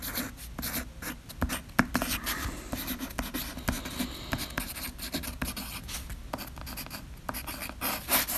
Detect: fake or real real